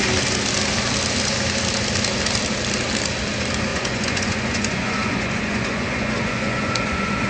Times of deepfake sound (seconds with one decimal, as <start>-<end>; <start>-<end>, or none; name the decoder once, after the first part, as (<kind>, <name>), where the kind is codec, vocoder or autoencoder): 3.7-7.3 (vocoder, Vocos)

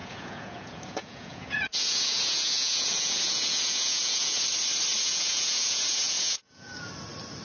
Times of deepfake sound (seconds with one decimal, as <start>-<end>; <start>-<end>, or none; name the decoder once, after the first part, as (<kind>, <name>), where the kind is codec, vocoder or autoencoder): 0.0-4.4 (vocoder, Vocos); 5.0-6.9